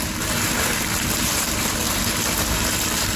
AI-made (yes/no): yes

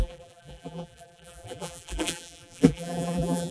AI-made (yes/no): yes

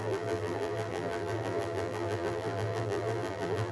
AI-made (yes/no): yes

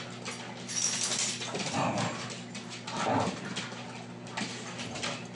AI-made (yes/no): no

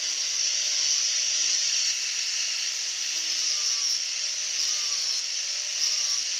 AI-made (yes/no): no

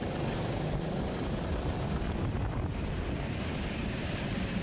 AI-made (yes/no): yes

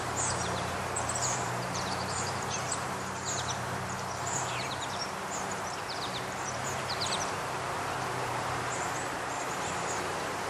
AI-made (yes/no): yes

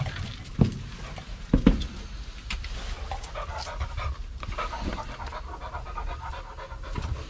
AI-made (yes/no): no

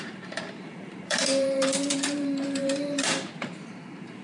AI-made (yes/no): yes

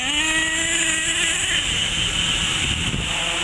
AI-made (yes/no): no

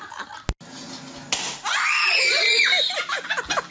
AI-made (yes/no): no